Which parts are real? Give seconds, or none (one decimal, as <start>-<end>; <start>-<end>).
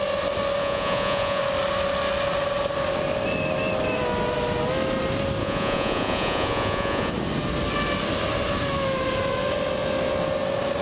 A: 0.0-0.6; 1.4-5.4; 7.1-10.8